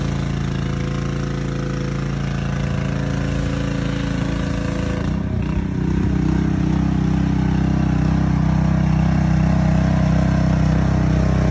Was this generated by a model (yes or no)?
no